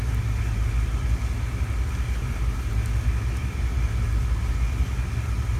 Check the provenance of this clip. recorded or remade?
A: recorded